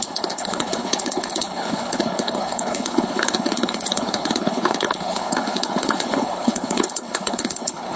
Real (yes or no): no